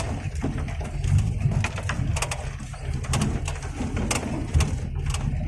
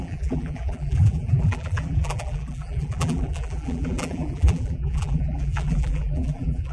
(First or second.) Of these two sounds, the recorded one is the first